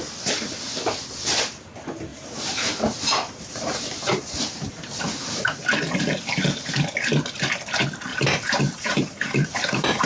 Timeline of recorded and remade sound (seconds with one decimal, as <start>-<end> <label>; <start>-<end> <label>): 0.0-2.1 recorded; 2.1-4.7 remade; 4.7-8.1 recorded; 8.1-10.1 remade